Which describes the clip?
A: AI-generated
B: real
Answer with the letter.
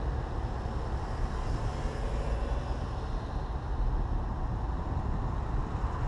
B